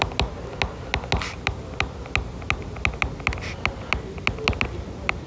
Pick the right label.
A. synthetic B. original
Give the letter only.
B